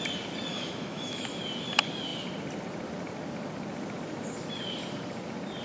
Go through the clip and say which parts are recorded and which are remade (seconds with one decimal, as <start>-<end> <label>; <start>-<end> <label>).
0.0-0.5 recorded; 0.5-1.4 remade; 1.4-5.6 recorded